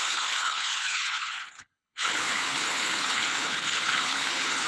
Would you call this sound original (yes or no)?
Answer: no